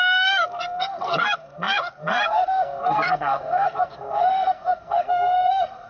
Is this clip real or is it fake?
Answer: fake